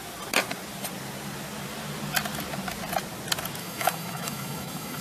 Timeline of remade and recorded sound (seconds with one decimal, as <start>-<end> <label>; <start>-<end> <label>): 0.0-3.6 recorded; 3.6-5.0 remade